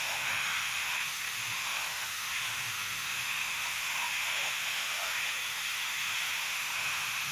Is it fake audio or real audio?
fake